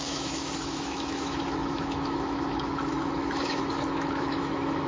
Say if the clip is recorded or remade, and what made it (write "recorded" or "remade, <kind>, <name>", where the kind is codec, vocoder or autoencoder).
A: remade, autoencoder, DAC-VAE